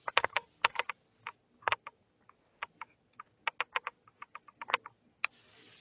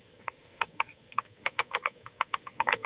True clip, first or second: first